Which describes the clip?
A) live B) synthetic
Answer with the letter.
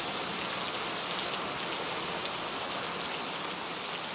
A